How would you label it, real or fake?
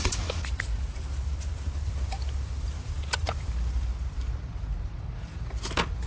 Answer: real